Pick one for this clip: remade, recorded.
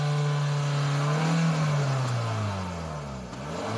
recorded